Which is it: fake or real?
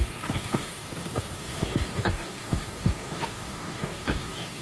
fake